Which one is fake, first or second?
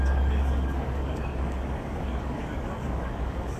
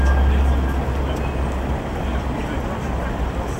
first